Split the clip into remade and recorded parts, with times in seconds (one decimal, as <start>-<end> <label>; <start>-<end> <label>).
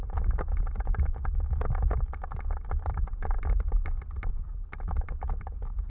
0.0-2.9 recorded; 2.9-4.3 remade; 4.3-5.9 recorded